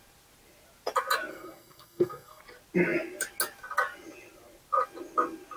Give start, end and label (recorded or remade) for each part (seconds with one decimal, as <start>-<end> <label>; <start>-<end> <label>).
0.0-1.3 recorded; 1.3-2.4 remade; 2.4-5.6 recorded